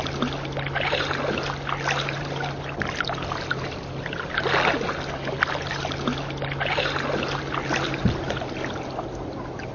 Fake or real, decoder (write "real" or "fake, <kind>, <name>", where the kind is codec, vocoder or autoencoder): real